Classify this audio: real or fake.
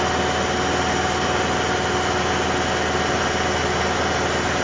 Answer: real